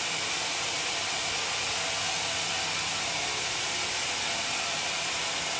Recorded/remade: recorded